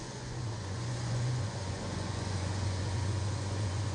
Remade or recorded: remade